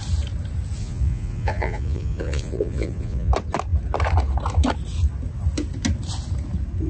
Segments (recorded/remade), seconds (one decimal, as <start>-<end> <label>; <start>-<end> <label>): 0.0-0.8 recorded; 0.8-3.3 remade; 3.3-6.9 recorded